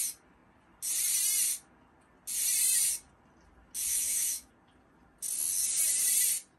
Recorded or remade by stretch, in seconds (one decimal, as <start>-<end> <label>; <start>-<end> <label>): 0.0-3.9 recorded; 3.9-4.5 remade; 4.5-6.6 recorded